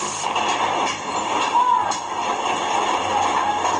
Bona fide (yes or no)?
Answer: yes